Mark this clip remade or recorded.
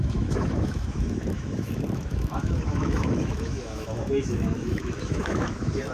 remade